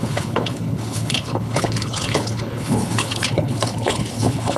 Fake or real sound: fake